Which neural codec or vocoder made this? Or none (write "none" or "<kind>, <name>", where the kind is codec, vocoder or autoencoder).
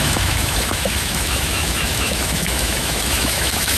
autoencoder, DAC-VAE